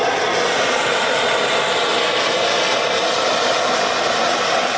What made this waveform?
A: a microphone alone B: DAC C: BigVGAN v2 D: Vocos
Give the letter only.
A